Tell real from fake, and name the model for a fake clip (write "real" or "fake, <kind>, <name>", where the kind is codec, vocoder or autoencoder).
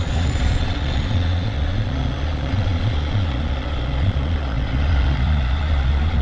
fake, vocoder, Vocos